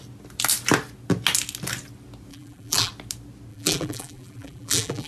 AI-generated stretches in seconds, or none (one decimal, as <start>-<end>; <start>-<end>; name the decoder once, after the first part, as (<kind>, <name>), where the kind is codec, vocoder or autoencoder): 2.3-2.9 (vocoder, BigVGAN v2); 3.5-5.1